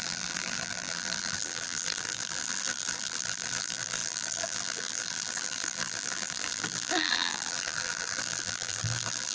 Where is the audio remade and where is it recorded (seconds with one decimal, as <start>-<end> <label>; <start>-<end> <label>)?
0.0-9.3 remade